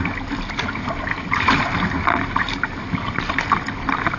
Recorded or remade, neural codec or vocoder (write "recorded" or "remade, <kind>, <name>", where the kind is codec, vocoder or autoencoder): recorded